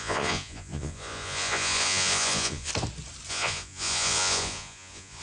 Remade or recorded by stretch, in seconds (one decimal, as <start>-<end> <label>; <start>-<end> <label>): 0.0-2.7 remade; 2.7-3.3 recorded; 3.3-5.2 remade